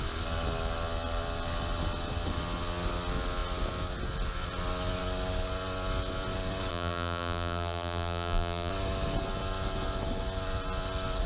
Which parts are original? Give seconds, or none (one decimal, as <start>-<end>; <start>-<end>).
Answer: 0.0-6.7; 8.7-11.3